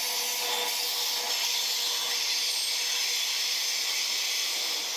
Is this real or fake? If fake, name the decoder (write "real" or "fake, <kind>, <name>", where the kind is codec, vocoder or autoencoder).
real